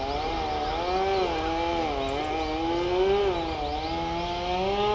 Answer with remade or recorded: recorded